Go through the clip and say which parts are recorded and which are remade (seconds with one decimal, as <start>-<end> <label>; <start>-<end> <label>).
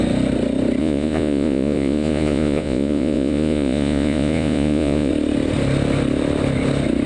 0.0-0.8 recorded; 0.8-5.1 remade; 5.1-7.1 recorded